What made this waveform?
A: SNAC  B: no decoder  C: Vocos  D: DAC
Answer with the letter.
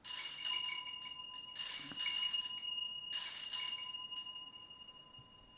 B